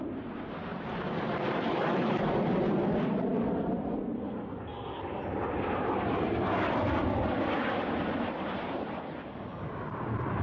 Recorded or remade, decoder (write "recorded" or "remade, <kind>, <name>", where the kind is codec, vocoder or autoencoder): recorded